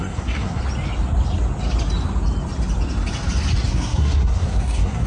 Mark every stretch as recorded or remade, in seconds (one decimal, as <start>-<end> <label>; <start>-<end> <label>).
0.0-0.6 remade; 0.6-3.7 recorded; 3.7-5.1 remade